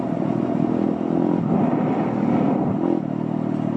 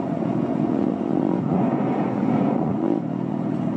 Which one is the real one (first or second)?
first